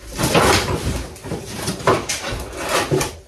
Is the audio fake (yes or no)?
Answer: no